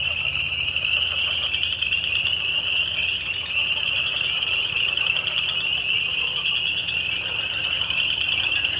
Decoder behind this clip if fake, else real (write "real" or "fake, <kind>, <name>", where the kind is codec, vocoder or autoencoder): real